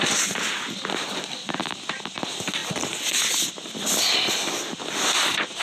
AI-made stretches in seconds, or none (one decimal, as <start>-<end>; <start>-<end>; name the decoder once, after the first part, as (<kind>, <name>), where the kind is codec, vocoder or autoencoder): none